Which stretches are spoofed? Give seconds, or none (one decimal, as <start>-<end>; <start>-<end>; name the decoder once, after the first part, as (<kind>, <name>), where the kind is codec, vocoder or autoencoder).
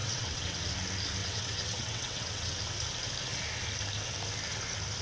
0.0-0.6 (vocoder, WaveNeXt); 1.2-2.6